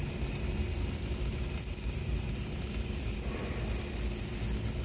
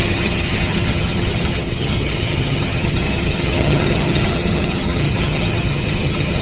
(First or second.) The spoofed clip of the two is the second